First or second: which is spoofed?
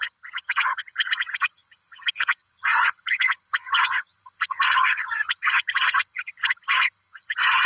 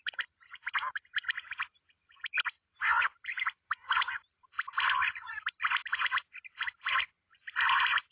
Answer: first